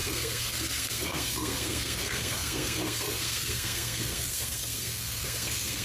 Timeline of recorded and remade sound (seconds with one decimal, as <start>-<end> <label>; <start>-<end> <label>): 0.0-5.8 remade